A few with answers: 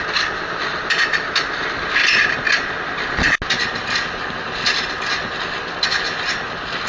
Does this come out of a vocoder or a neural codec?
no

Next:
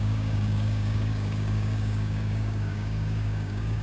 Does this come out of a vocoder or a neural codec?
yes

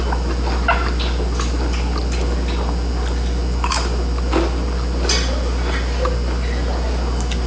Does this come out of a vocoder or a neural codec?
no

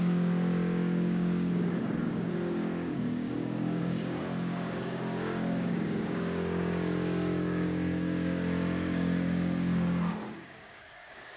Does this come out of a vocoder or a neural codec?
yes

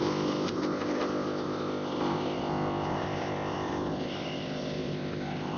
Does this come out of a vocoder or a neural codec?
yes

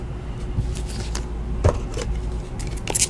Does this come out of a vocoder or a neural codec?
no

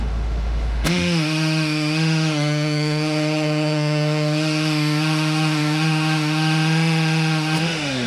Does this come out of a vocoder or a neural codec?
yes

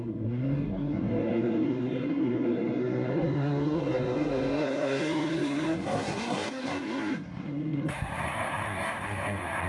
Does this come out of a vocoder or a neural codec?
yes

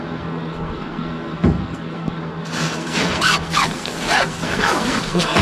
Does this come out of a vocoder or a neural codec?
yes